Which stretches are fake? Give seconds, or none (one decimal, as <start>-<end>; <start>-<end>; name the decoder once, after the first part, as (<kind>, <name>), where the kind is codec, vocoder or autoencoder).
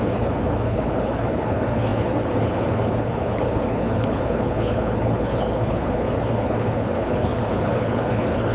0.0-8.5 (codec, HILCodec)